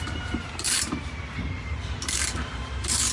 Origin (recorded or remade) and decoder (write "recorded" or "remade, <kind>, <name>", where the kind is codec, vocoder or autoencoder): remade, vocoder, BigVGAN v2